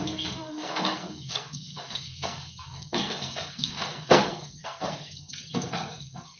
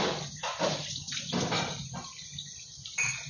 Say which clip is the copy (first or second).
first